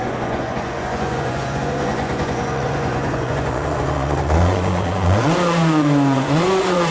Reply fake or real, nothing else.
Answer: fake